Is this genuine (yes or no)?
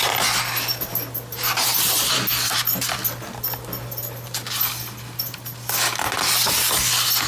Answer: yes